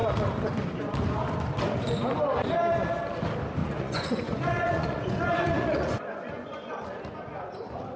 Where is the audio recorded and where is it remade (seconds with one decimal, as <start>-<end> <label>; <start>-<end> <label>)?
0.0-3.6 recorded; 3.6-6.7 remade; 6.7-8.0 recorded